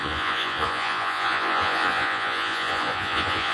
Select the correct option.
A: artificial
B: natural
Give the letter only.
A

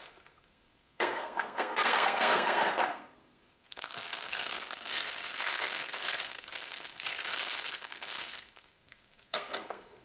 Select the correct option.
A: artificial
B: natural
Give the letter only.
A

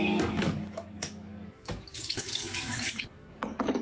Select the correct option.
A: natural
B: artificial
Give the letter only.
B